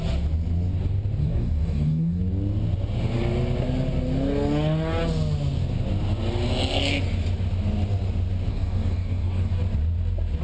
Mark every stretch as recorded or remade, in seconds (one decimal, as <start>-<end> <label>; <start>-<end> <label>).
0.0-1.2 recorded; 1.2-2.2 remade; 2.2-8.5 recorded; 8.5-9.6 remade; 9.6-10.4 recorded